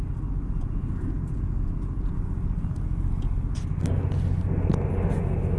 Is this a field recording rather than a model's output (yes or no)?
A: yes